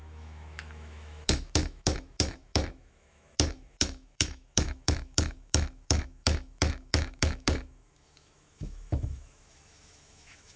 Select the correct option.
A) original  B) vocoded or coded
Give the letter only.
B